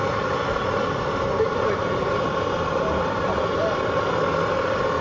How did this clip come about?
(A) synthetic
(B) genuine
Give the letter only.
B